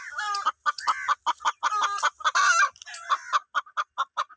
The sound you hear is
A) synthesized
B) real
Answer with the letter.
B